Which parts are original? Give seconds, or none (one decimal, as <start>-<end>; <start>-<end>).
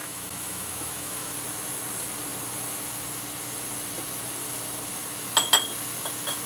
1.3-6.5